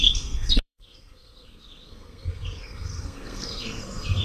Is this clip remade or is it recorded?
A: remade